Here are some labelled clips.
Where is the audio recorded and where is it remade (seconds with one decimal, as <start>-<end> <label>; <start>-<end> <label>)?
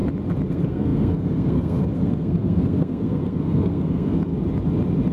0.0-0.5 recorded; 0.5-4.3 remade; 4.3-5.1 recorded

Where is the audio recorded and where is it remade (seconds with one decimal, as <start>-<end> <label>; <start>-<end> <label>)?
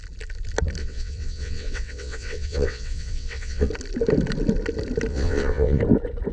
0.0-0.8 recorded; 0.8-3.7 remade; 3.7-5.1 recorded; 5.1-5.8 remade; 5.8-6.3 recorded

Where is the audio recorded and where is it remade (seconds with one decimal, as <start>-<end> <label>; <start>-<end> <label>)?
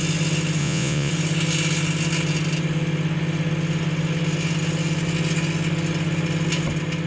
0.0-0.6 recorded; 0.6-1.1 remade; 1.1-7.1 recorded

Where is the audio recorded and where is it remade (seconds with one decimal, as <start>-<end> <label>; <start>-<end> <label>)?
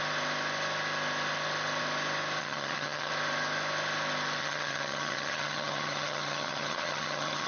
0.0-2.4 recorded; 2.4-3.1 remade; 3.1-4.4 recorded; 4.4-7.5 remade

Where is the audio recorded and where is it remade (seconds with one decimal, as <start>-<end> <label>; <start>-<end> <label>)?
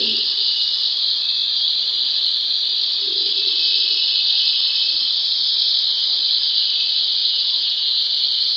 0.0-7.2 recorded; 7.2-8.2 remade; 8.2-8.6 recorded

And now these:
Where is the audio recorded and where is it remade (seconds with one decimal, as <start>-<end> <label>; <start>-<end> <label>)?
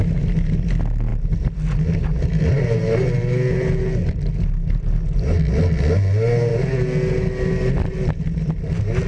0.0-9.1 recorded